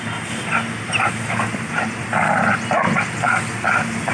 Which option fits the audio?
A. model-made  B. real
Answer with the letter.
B